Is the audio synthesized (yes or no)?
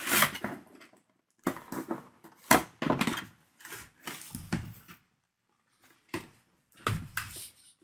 no